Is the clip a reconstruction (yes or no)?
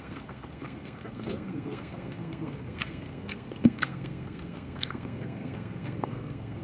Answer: yes